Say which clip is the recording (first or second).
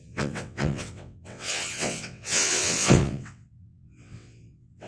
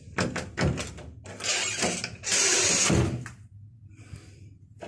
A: second